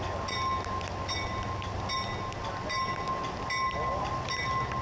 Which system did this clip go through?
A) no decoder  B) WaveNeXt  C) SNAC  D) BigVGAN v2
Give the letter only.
A